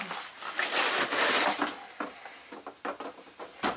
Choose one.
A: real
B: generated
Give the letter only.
A